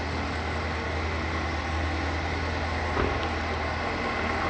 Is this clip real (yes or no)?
yes